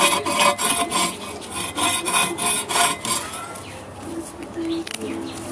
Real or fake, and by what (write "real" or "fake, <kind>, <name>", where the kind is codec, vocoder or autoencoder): real